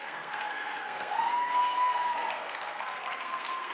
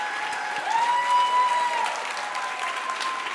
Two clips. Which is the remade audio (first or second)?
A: first